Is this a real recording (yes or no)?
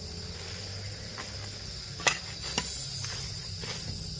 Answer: yes